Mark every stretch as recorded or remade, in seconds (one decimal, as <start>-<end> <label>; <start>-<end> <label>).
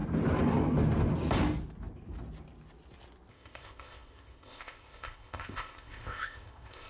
0.0-3.3 recorded; 3.3-6.9 remade